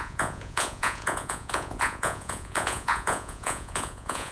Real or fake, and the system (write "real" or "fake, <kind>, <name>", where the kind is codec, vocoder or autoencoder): fake, vocoder, Vocos